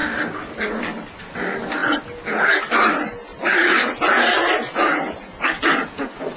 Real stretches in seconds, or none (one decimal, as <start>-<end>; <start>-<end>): 0.0-3.3; 3.9-6.4